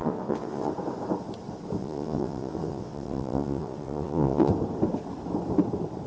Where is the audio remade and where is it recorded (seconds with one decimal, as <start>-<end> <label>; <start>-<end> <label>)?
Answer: 0.0-0.7 remade; 0.7-1.8 recorded; 1.8-4.5 remade; 4.5-6.1 recorded